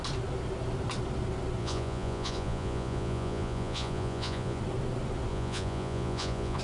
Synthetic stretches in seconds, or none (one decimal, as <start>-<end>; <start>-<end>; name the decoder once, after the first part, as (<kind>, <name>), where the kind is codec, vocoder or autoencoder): 1.6-4.6 (vocoder, Vocos); 5.3-6.6